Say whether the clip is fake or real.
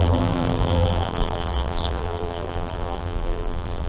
fake